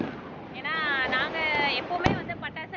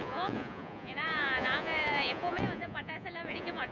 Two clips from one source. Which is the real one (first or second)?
first